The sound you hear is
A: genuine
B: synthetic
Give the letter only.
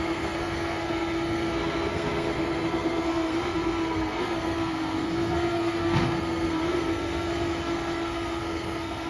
B